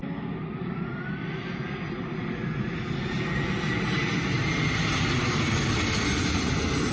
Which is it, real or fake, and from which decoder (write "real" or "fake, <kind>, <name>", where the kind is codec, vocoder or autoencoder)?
real